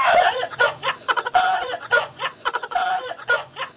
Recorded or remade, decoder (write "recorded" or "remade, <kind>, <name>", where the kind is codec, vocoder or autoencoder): remade, vocoder, Vocos